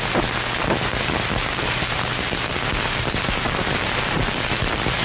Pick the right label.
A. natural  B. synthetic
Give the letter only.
A